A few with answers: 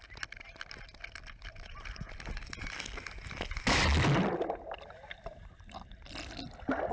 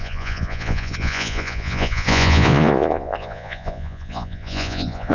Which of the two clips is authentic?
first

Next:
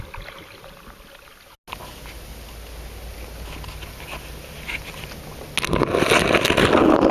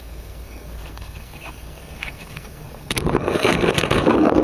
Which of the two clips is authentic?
first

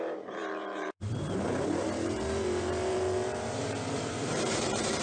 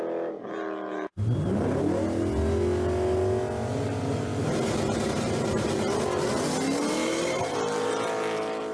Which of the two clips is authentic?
second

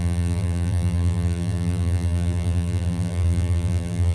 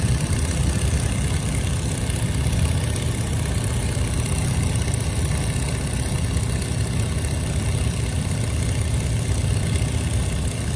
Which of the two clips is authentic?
second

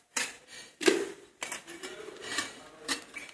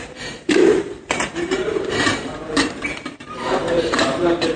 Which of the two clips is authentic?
first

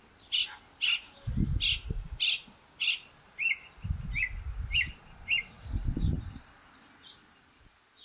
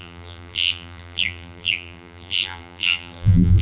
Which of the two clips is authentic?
first